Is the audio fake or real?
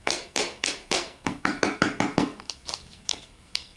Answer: fake